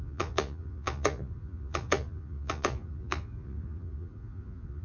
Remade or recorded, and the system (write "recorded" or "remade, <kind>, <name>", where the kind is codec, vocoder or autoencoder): remade, vocoder, Vocos